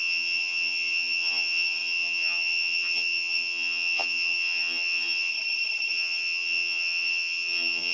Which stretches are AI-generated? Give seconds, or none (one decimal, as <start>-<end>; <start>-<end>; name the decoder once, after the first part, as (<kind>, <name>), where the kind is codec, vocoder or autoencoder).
0.0-5.3 (vocoder, HiFi-GAN); 5.9-7.9

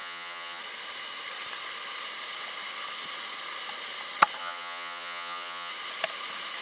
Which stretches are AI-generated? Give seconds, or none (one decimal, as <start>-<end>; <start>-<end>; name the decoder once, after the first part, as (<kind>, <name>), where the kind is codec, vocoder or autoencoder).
0.0-0.6 (vocoder, HiFi-GAN); 4.4-5.7

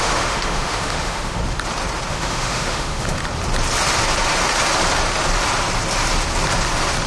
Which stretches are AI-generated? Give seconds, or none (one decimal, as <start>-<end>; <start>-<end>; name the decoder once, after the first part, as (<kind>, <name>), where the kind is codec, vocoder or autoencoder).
0.0-1.4 (autoencoder, DAC-VAE); 2.1-3.2

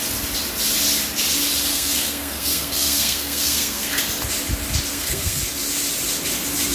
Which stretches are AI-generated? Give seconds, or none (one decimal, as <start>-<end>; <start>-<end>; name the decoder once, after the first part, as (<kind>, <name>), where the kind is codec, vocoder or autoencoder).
1.7-4.0 (codec, SNAC); 4.9-5.4

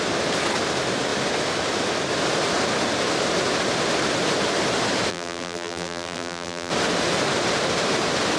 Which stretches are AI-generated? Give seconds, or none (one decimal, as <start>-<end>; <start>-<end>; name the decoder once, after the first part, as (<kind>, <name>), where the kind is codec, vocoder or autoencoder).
5.1-6.7 (vocoder, BigVGAN v2)

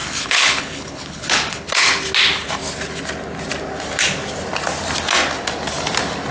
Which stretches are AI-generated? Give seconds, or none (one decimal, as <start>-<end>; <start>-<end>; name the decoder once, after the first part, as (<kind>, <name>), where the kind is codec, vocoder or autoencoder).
0.0-1.9 (codec, HILCodec)

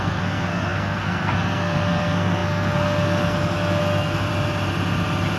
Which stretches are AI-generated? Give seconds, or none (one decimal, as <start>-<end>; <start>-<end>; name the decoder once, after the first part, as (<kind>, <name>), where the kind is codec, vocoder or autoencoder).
0.0-4.3 (codec, SNAC)